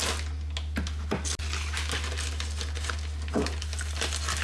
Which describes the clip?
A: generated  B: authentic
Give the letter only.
B